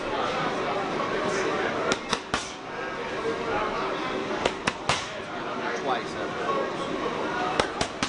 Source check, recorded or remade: recorded